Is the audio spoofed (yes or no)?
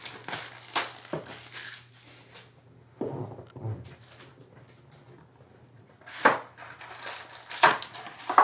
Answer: no